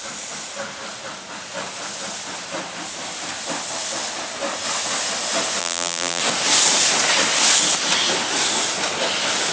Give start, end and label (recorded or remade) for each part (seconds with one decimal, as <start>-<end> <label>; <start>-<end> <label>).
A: 0.0-5.6 recorded; 5.6-6.2 remade; 6.2-9.5 recorded